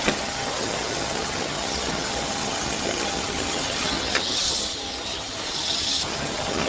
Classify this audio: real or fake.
fake